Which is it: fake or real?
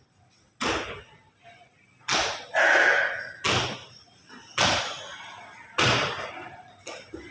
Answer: real